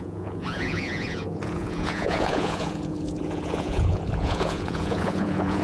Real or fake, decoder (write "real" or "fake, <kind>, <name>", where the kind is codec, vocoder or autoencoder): fake, vocoder, Vocos